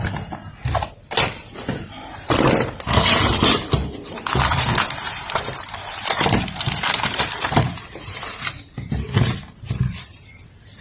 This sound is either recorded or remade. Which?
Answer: remade